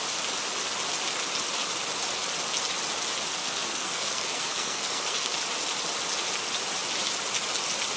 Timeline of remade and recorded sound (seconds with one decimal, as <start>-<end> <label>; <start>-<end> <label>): 0.0-3.4 recorded; 3.4-5.4 remade; 5.4-8.0 recorded